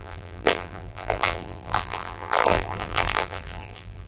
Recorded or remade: remade